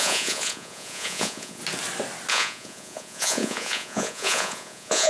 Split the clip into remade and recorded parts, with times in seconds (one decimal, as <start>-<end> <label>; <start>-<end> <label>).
0.0-1.6 remade; 1.6-2.3 recorded; 2.3-5.1 remade